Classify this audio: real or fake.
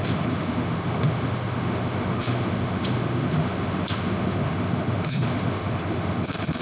fake